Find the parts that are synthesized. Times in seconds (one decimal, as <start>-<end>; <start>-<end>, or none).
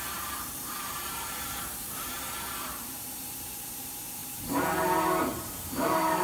0.0-6.2